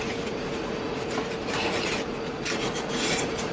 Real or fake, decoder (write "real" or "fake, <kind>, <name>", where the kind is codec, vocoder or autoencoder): fake, vocoder, Vocos